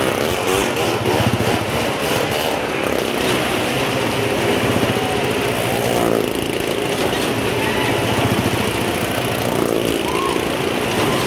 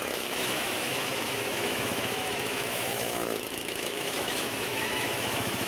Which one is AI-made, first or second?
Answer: second